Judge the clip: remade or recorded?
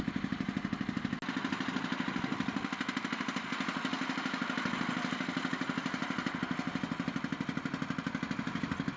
recorded